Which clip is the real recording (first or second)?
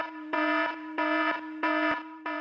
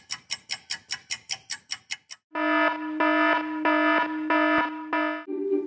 second